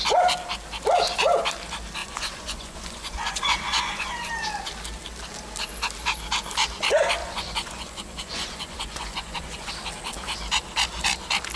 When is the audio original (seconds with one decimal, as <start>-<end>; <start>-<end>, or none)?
0.0-2.0; 4.3-7.2; 9.7-11.6